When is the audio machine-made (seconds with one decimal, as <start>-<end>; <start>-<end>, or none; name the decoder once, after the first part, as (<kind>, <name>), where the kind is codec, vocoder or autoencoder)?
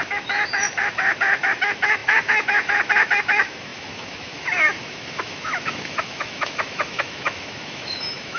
0.0-8.4 (autoencoder, DAC-VAE)